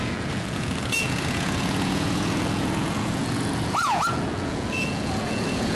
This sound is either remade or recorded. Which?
remade